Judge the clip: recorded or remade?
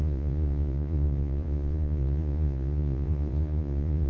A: remade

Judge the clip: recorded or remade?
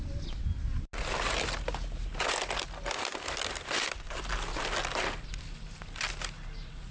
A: recorded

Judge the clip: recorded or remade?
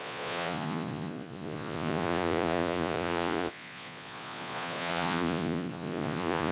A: remade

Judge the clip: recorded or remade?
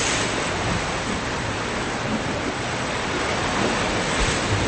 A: recorded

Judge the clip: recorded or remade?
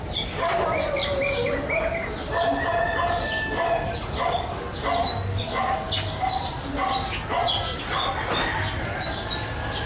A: recorded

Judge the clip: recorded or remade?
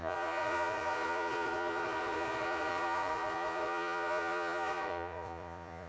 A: remade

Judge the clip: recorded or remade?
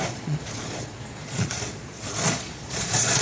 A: remade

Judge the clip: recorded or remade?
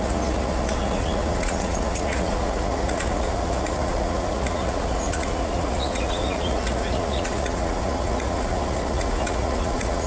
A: remade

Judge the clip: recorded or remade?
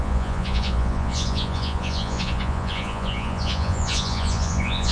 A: remade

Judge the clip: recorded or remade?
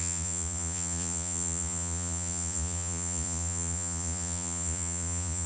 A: remade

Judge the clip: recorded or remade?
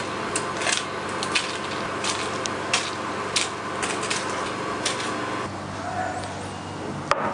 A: recorded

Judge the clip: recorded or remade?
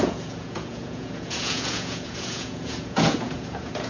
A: remade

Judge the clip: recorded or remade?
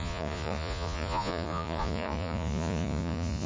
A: remade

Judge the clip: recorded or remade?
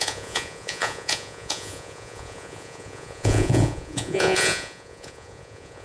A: remade